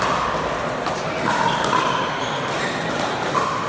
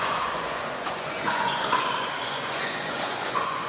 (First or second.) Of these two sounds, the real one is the first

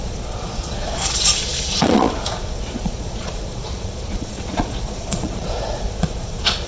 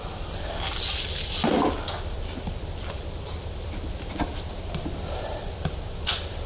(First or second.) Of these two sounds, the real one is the second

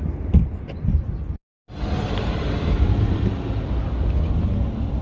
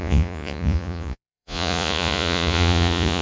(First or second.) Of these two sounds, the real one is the first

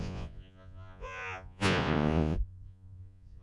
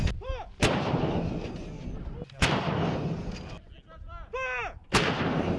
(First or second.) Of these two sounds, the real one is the second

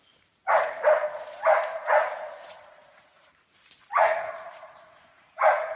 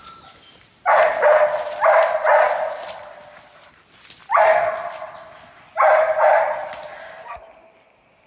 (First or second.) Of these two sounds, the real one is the second